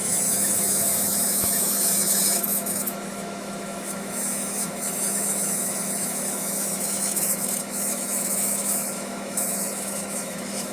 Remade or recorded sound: remade